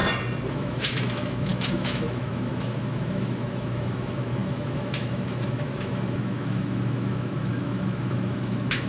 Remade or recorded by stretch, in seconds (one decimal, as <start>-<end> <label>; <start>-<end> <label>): 0.0-0.5 recorded; 0.5-8.9 remade